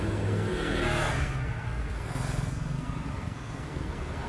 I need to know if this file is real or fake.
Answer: fake